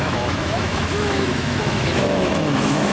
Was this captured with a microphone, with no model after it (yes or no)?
no